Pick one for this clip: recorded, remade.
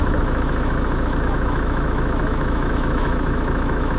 remade